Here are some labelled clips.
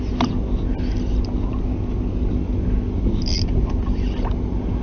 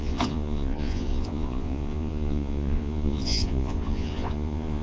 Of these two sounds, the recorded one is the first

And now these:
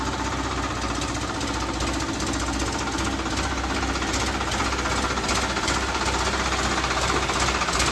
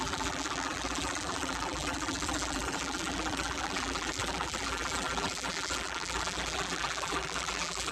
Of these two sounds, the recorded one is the first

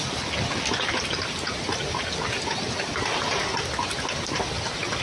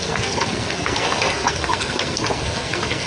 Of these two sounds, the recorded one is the first